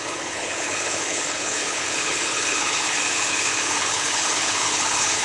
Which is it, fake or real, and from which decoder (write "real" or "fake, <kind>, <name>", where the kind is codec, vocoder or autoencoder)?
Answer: fake, codec, HILCodec